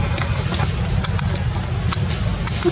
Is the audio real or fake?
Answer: real